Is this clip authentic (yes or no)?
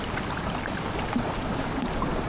yes